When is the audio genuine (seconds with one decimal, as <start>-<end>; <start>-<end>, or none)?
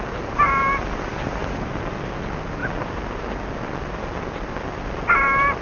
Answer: 0.0-5.6